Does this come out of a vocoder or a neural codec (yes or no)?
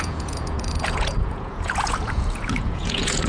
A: yes